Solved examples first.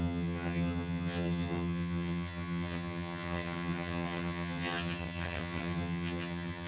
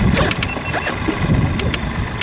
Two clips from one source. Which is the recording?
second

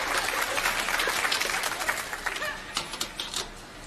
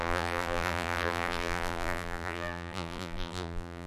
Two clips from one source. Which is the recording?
first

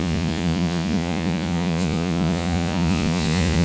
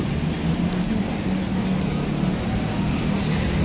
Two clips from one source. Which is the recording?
second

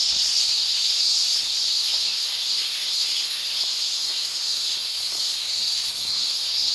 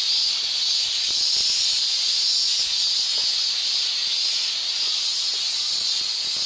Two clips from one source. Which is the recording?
second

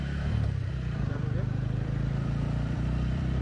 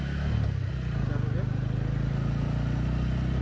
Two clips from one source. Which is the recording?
second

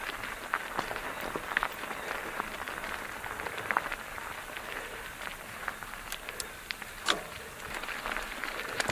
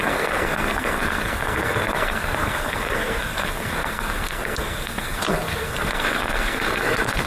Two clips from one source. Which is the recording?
first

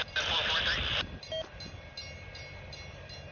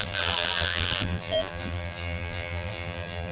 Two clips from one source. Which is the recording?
first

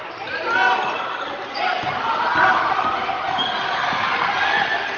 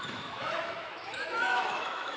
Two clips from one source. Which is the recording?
first